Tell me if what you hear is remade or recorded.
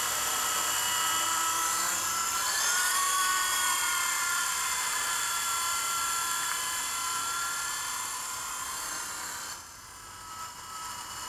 remade